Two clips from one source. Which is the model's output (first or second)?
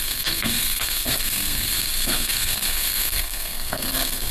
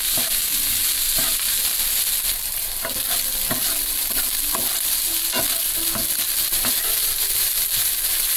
first